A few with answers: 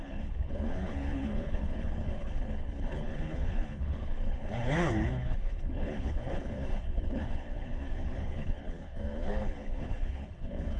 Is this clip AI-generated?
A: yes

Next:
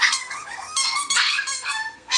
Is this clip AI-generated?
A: yes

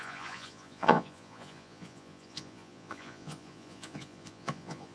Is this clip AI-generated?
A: yes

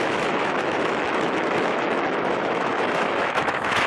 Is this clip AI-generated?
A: yes